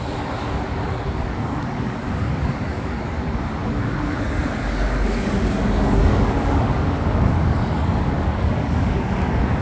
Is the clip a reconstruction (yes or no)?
yes